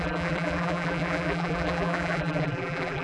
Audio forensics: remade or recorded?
remade